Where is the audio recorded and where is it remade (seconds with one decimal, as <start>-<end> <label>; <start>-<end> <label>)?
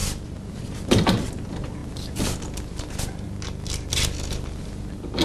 0.0-5.2 recorded